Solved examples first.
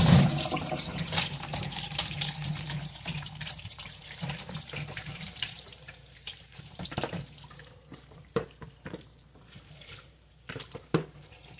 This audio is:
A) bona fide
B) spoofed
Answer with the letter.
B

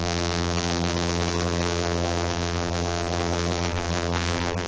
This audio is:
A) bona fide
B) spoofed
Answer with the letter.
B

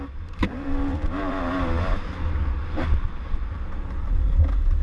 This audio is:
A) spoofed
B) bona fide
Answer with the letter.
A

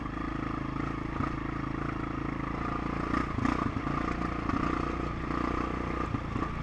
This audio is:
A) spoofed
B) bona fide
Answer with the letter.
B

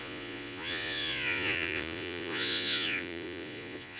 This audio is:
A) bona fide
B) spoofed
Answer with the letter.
B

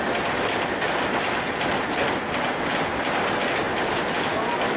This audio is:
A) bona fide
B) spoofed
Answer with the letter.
A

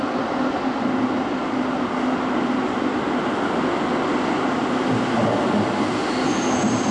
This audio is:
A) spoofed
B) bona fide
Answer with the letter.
B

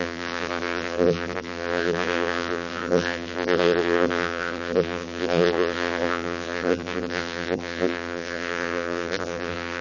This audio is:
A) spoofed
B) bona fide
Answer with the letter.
A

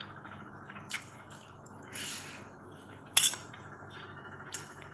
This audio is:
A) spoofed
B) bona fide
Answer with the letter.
A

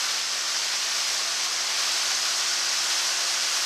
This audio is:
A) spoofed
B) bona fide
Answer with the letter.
B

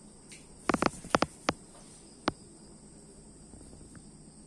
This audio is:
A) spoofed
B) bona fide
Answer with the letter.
B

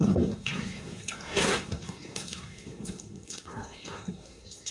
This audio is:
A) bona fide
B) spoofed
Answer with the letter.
B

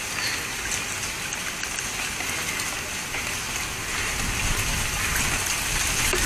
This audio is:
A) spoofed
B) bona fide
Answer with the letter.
B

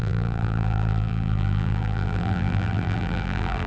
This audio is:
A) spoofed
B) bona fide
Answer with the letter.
A